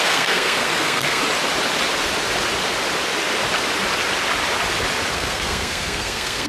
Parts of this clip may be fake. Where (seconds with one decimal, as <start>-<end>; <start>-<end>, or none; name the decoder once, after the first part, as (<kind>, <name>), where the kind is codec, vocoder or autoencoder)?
0.0-1.2 (codec, SNAC); 5.1-6.5